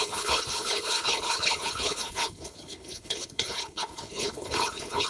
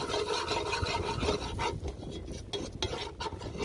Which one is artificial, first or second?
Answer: first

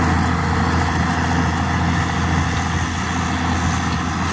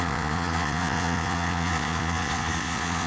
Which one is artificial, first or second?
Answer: second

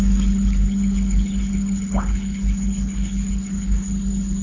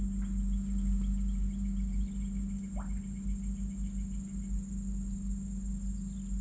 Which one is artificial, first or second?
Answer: first